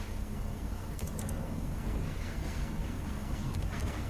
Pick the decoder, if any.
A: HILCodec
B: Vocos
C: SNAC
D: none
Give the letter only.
C